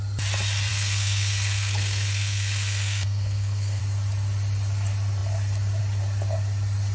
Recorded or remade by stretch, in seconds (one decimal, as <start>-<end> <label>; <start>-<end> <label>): 0.0-0.7 recorded; 0.7-3.8 remade; 3.8-6.9 recorded